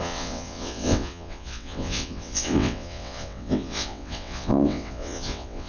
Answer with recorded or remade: remade